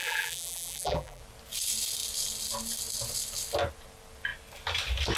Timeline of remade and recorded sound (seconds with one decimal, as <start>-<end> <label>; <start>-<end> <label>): 0.0-1.2 remade; 1.2-5.2 recorded